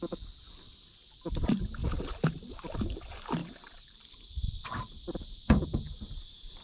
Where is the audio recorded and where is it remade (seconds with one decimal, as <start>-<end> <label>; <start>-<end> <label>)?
0.0-1.8 recorded; 1.8-3.0 remade; 3.0-3.4 recorded; 3.4-6.6 remade